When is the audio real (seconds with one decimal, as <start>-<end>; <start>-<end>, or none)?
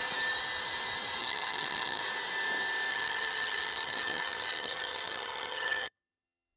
0.0-1.2; 2.0-2.9